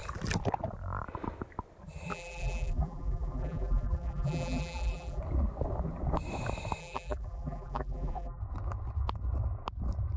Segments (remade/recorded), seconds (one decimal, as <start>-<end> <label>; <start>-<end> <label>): 0.0-2.1 recorded; 2.1-5.2 remade; 5.2-6.8 recorded; 6.8-8.4 remade; 8.4-10.2 recorded